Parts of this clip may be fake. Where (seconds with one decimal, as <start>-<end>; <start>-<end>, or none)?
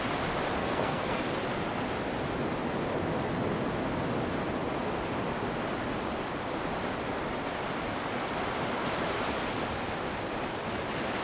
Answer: 0.6-1.2